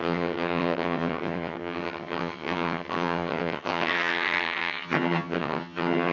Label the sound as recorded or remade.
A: remade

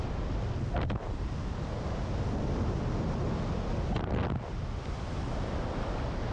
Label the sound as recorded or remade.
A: recorded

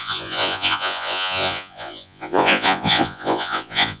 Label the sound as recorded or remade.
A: remade